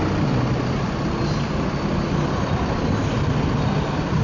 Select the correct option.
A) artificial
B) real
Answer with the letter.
B